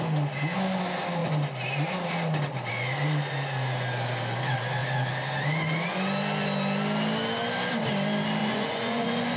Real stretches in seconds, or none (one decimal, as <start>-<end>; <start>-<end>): 0.0-8.4